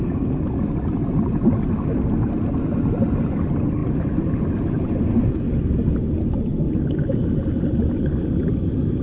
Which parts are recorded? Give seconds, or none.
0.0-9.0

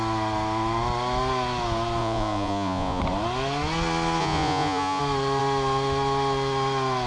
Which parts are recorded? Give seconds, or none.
0.0-2.0; 3.0-4.2; 5.0-7.1

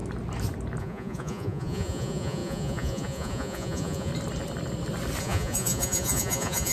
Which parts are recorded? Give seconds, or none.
0.0-0.8; 4.1-5.2

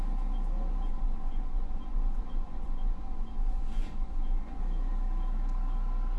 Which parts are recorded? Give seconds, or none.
0.0-0.9; 4.6-6.2

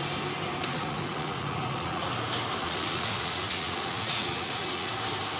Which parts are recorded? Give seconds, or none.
0.0-0.7; 2.1-2.6; 4.9-5.4